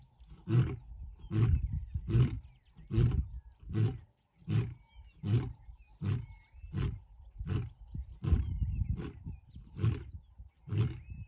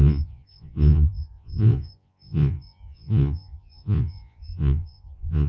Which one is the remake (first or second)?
second